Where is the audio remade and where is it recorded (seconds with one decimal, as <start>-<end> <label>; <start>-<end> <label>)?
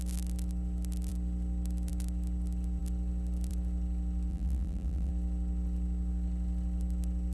0.0-4.3 recorded; 4.3-5.1 remade; 5.1-7.3 recorded